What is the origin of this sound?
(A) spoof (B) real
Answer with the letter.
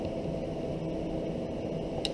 B